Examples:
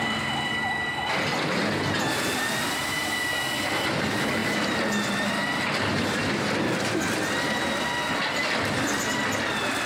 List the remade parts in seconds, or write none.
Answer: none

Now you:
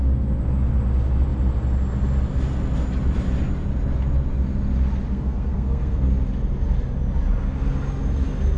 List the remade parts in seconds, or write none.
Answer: 5.1-6.1 (codec, SNAC)

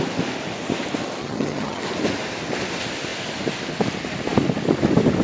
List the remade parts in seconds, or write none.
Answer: 1.2-1.8 (vocoder, HiFi-GAN)

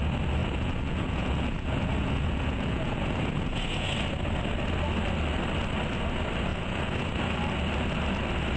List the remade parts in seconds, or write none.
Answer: 0.4-4.0 (vocoder, Vocos); 6.5-7.1

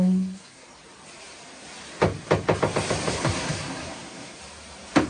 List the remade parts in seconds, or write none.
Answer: 0.0-0.7 (codec, SNAC); 3.1-4.4

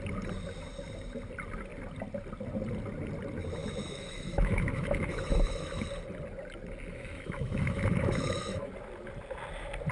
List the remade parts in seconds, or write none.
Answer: 3.6-5.8 (autoencoder, DAC-VAE); 6.9-8.7